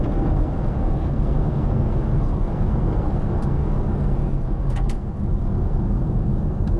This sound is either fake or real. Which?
fake